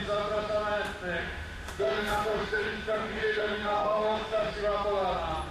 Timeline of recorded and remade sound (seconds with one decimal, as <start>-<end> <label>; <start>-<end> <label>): 0.0-1.2 recorded; 1.2-4.5 remade; 4.5-5.5 recorded